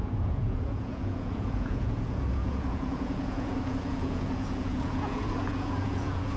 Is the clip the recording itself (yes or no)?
no